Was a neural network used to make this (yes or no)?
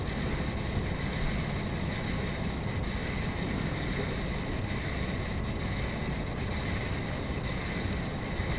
no